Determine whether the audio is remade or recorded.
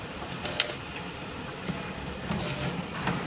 recorded